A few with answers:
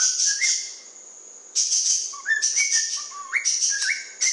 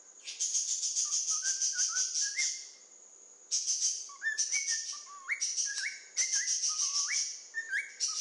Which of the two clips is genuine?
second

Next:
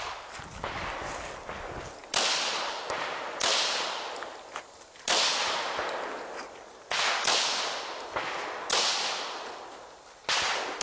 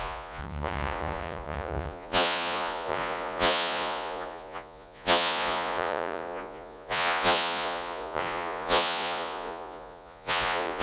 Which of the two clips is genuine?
first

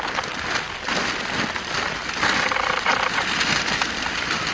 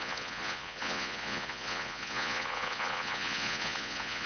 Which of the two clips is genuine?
first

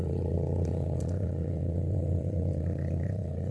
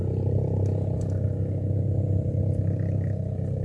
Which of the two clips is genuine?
second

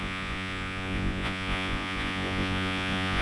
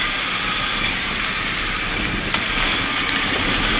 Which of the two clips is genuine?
second